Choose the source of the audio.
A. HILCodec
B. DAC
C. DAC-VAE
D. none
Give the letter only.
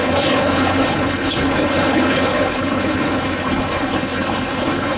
A